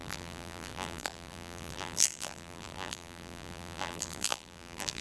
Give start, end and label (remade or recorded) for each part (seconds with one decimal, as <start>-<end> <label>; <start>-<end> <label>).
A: 0.0-5.0 remade